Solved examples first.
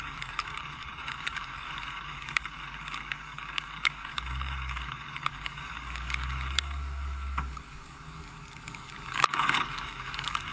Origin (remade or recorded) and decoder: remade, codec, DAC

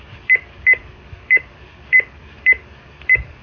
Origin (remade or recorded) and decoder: remade, codec, DAC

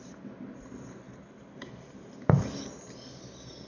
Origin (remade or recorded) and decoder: recorded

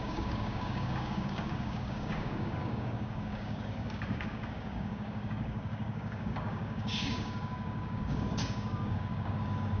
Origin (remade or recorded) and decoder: remade, codec, DAC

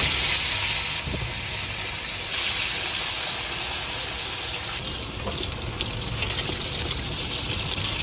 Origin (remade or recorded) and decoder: recorded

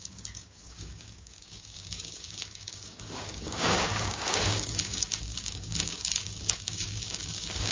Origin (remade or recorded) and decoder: remade, codec, DAC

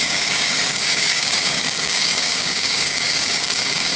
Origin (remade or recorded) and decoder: remade, codec, DAC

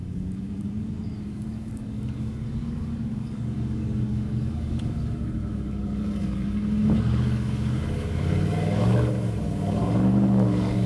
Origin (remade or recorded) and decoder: remade, codec, DAC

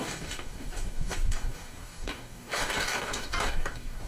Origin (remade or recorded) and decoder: remade, codec, DAC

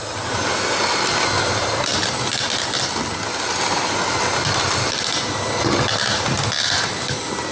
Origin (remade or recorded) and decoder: recorded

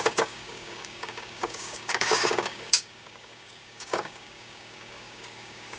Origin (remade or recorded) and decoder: remade, codec, DAC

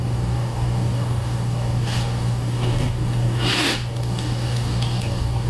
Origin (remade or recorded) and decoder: remade, codec, DAC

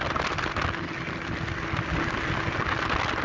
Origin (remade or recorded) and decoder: recorded